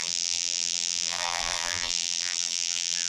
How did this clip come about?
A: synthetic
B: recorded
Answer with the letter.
A